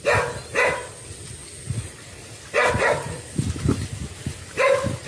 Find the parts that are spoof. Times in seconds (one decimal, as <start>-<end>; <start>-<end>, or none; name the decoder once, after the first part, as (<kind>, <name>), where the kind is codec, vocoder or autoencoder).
none